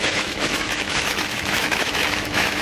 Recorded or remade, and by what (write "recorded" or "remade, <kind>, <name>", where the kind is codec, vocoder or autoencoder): remade, autoencoder, DAC-VAE